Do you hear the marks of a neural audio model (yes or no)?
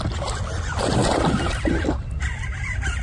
yes